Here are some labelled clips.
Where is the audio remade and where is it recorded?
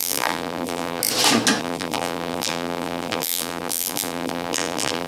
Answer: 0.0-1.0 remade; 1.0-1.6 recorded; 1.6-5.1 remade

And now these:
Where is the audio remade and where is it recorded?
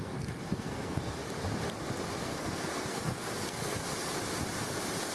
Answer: 0.0-1.2 remade; 1.2-2.2 recorded; 2.2-3.8 remade; 3.8-5.1 recorded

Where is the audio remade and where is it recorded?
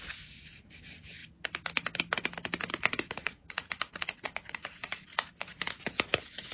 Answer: 0.0-3.2 recorded; 3.2-5.5 remade; 5.5-6.5 recorded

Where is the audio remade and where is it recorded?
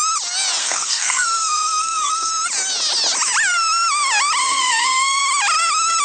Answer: 0.0-0.6 recorded; 0.6-2.3 remade; 2.3-4.4 recorded; 4.4-5.2 remade; 5.2-6.0 recorded